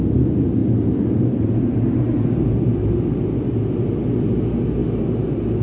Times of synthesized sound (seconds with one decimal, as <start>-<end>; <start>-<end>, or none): none